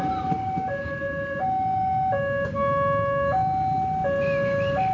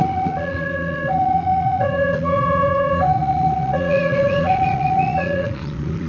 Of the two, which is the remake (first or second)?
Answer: second